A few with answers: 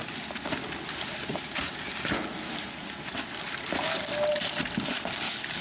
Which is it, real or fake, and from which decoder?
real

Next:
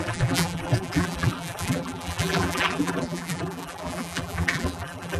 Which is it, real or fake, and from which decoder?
fake, vocoder, BigVGAN v2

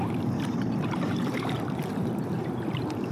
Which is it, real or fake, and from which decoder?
fake, vocoder, BigVGAN v2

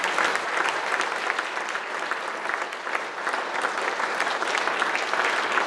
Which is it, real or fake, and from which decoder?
real